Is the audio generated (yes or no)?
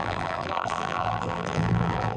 yes